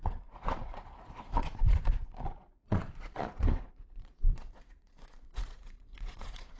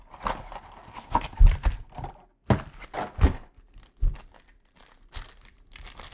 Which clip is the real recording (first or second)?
second